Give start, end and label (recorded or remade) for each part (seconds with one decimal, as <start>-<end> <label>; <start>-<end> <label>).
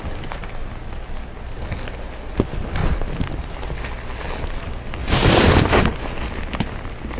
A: 0.0-2.8 recorded; 2.8-3.8 remade; 3.8-5.0 recorded; 5.0-5.9 remade; 5.9-7.2 recorded